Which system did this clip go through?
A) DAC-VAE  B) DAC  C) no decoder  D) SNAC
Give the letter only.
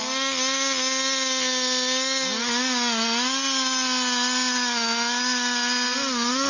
C